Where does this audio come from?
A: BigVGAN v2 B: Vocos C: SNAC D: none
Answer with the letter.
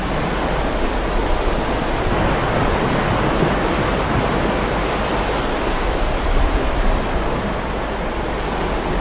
D